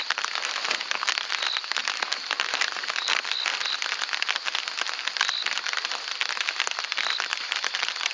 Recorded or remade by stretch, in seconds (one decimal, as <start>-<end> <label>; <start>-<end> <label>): 0.0-1.8 recorded; 1.8-3.1 remade; 3.1-8.1 recorded